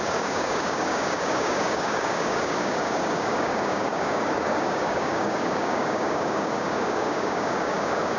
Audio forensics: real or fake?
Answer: fake